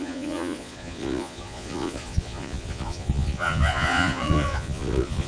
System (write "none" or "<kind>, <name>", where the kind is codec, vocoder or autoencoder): vocoder, Vocos